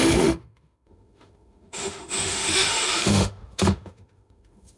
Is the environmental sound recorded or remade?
remade